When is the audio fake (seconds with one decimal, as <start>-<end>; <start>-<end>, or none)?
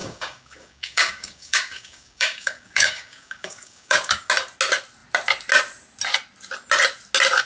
0.0-4.3